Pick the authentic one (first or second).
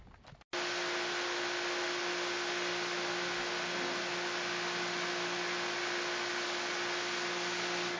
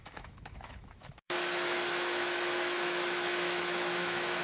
first